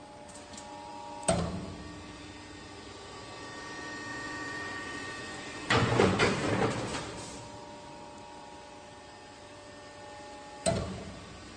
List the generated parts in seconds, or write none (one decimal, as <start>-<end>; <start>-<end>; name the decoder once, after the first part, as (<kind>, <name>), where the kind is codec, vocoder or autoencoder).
4.1-6.2 (vocoder, Vocos)

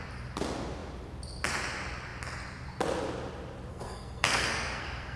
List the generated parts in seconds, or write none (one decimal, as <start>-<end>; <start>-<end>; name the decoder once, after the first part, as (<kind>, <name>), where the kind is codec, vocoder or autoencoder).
3.7-5.2 (codec, SNAC)